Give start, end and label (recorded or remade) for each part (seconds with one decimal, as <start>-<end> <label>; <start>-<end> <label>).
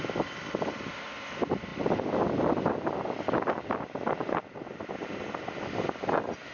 0.0-6.5 remade